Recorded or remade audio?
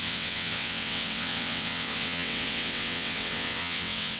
remade